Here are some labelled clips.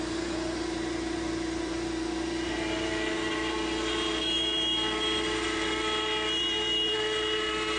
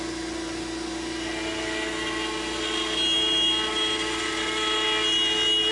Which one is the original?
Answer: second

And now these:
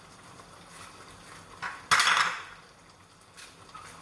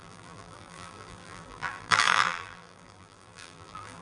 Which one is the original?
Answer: first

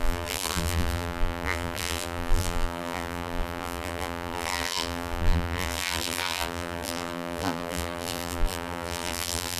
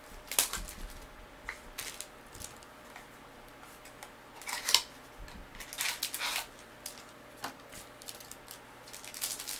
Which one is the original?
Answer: second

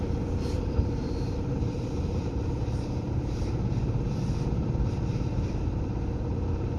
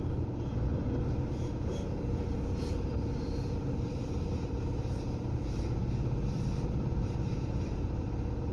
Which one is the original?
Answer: second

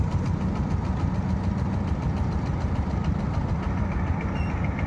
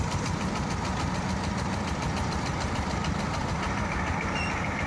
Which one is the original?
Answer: first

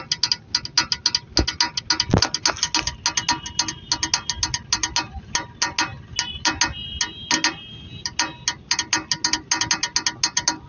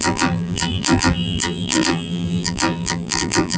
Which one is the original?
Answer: first